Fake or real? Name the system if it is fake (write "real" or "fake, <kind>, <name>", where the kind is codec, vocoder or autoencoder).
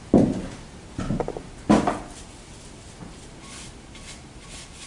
real